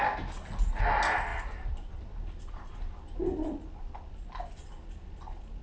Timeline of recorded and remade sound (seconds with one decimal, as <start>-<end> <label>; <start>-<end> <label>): 0.0-5.6 recorded